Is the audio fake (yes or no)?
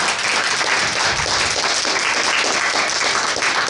no